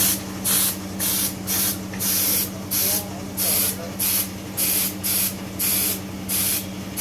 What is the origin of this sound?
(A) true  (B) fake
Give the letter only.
A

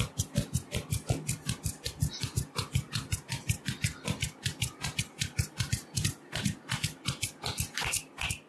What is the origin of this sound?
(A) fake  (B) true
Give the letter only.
B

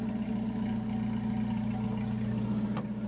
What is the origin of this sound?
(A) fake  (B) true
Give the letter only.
B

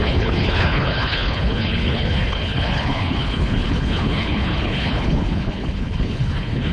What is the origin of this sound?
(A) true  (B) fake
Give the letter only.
B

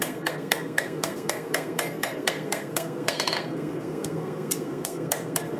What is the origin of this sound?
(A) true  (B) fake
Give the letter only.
B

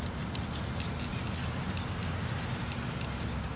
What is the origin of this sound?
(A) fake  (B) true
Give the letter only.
B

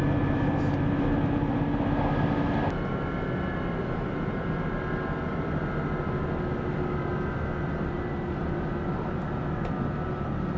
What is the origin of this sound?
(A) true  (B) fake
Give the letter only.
A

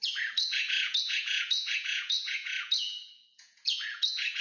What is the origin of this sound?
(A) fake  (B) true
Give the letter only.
A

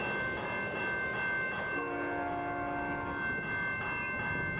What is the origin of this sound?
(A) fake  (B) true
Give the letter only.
B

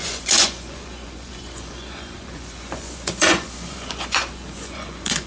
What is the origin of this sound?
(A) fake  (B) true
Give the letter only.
A